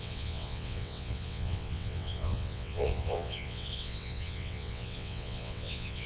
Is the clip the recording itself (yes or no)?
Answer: no